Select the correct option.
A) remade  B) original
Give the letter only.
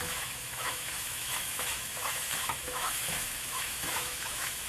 A